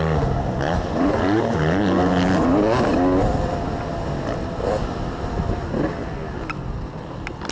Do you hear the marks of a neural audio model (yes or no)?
no